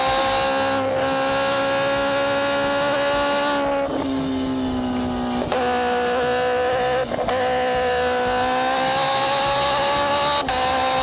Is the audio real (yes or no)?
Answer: yes